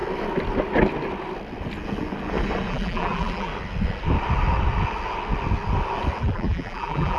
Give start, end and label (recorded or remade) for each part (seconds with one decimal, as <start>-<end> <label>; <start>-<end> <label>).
0.0-2.7 recorded; 2.7-3.5 remade; 3.5-6.2 recorded; 6.2-7.2 remade